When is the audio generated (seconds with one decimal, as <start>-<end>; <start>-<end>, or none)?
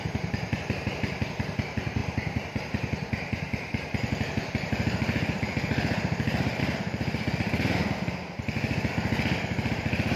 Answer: 0.0-7.8; 9.7-10.2